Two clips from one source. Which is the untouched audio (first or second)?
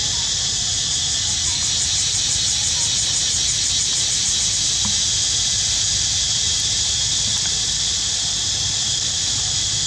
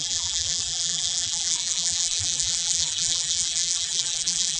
first